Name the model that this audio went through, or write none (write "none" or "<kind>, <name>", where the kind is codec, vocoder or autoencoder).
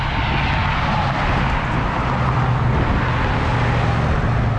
none